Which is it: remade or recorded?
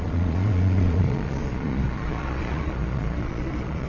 remade